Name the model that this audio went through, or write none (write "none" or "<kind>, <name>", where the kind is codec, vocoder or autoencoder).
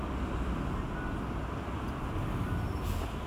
none